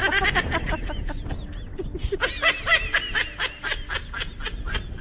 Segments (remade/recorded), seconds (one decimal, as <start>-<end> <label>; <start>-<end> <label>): 0.0-5.0 recorded